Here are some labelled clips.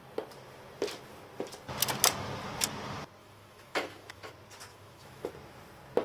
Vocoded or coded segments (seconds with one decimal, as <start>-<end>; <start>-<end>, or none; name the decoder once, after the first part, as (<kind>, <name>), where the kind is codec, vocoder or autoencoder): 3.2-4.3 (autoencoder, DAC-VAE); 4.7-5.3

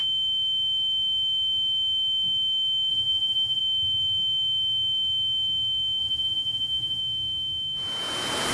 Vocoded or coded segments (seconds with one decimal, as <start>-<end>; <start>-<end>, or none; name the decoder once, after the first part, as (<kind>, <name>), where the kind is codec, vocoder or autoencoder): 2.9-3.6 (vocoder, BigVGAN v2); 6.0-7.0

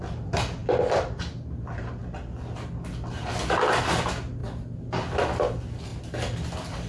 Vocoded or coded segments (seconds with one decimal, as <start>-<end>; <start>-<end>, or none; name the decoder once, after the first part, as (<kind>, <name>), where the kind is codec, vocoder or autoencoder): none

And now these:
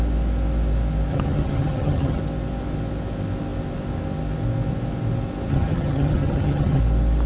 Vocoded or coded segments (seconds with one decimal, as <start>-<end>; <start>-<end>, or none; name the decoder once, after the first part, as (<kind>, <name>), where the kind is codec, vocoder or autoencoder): 1.1-2.2 (vocoder, HiFi-GAN); 5.5-6.8

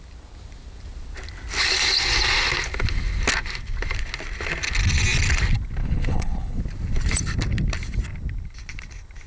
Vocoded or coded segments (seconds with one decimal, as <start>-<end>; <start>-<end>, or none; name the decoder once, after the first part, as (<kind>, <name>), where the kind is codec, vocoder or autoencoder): 5.8-6.6 (codec, HILCodec)